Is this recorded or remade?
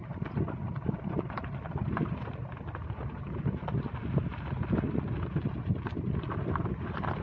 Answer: recorded